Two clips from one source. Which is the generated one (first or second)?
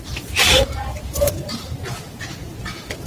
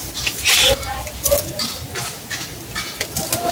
first